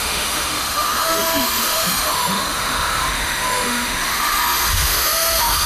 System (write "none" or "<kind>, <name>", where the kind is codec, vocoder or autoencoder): autoencoder, DAC-VAE